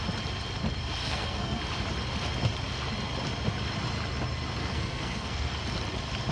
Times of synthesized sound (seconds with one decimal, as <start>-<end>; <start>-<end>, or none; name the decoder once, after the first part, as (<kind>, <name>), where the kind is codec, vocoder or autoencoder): 1.0-1.6 (codec, SNAC); 4.6-5.5